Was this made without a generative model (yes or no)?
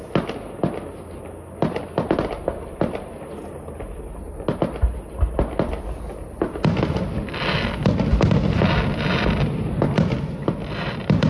yes